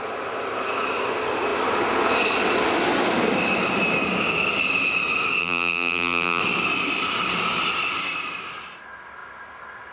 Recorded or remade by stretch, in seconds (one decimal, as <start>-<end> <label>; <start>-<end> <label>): 0.0-5.4 recorded; 5.4-6.4 remade; 6.4-9.9 recorded